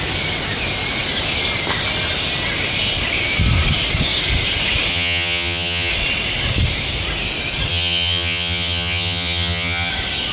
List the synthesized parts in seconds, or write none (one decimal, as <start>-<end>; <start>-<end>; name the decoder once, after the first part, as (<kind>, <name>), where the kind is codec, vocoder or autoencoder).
4.9-5.9 (vocoder, HiFi-GAN); 7.7-9.9